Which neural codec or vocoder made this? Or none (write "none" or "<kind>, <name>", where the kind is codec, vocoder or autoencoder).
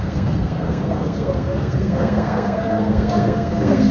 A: codec, SNAC